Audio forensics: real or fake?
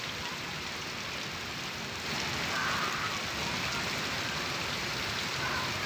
real